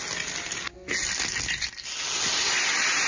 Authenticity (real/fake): real